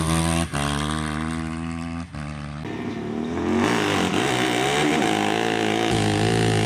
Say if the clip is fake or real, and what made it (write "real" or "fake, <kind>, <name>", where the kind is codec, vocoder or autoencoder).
real